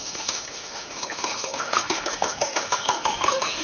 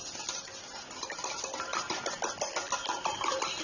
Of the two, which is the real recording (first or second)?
second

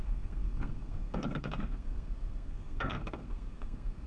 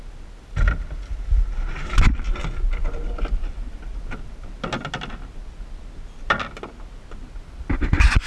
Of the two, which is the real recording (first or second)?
second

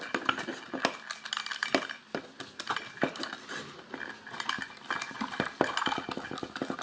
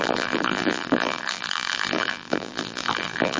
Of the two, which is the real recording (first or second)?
first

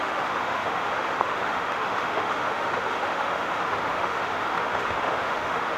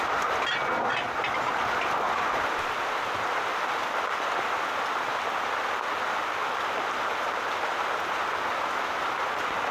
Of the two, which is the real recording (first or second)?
second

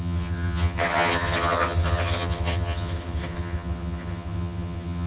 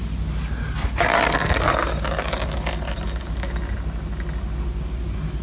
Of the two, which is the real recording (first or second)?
second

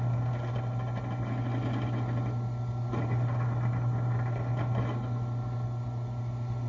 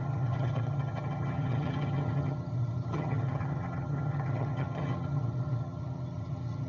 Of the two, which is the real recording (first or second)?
first